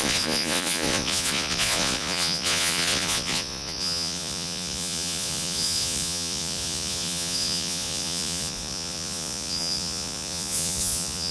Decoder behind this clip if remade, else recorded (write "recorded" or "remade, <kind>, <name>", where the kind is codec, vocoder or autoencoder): remade, vocoder, Vocos